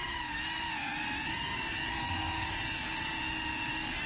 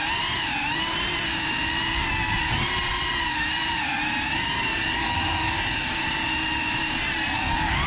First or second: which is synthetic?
second